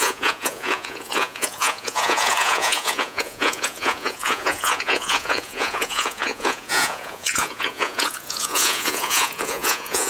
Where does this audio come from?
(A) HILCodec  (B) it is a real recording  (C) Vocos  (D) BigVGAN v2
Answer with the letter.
C